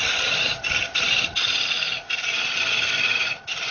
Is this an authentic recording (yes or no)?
yes